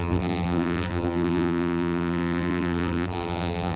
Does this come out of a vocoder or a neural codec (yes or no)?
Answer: yes